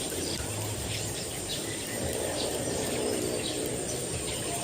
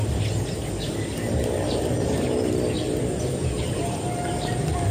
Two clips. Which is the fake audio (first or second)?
first